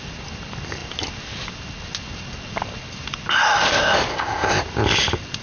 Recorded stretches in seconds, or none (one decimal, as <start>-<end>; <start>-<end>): 0.0-4.1; 4.6-5.4